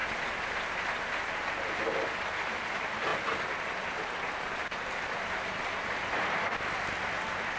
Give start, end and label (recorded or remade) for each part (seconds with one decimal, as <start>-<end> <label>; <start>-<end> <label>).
0.0-7.6 recorded